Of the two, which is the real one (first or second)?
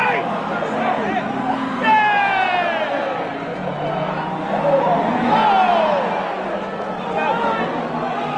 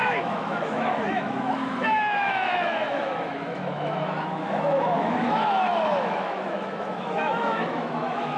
first